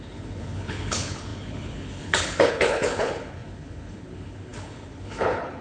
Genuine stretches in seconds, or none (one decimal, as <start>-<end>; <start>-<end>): none